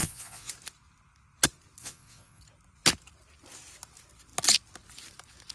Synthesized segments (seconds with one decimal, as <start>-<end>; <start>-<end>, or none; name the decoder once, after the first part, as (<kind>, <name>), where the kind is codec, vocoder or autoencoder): 0.0-0.5 (vocoder, Vocos); 1.8-2.4